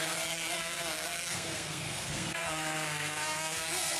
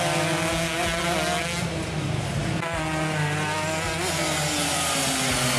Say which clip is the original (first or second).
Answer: second